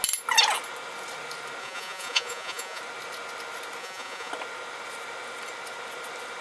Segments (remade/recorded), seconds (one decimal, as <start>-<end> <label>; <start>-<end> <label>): 0.0-1.6 recorded; 1.6-2.8 remade; 2.8-3.8 recorded; 3.8-4.3 remade; 4.3-6.4 recorded